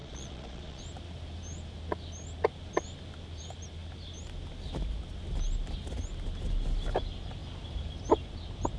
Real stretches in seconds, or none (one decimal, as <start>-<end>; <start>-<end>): 0.8-8.8